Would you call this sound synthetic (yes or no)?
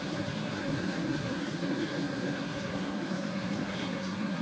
yes